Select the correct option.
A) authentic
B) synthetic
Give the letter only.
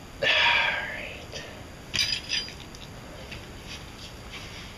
A